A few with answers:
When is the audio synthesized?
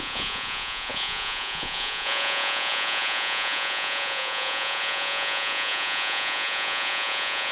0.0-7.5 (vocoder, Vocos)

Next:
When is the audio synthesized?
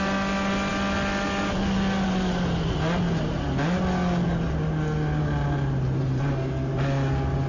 none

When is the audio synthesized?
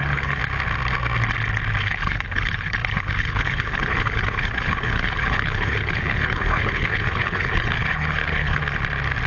0.0-0.4 (codec, HILCodec); 1.8-8.6